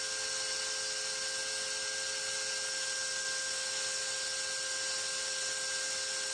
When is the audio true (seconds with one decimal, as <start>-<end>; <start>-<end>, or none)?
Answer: 0.0-6.3